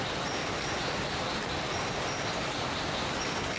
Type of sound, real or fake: real